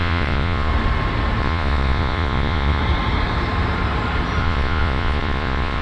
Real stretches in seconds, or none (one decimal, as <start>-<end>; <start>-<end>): 0.7-1.4; 2.8-4.4